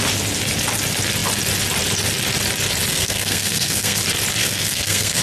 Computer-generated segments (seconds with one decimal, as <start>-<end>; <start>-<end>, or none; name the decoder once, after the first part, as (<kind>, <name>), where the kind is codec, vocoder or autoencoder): 2.9-4.0 (codec, SNAC); 4.4-5.2